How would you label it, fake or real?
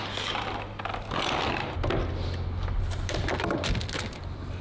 real